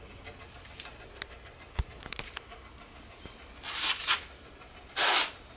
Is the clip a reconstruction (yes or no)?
no